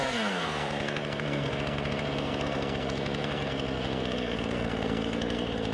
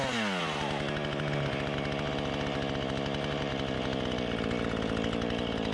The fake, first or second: first